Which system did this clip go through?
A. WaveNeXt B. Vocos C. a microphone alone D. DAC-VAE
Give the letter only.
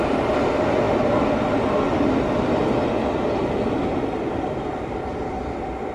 C